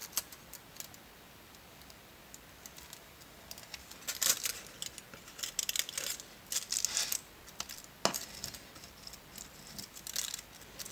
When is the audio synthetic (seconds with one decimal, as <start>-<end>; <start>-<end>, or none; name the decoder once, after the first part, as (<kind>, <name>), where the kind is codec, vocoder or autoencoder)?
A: none